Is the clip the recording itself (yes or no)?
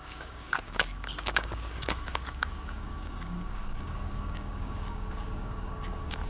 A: no